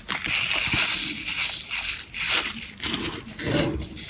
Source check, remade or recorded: remade